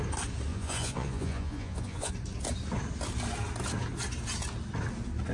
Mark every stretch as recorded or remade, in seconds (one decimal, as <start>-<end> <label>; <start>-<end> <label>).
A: 0.0-0.5 recorded; 0.5-2.1 remade; 2.1-5.3 recorded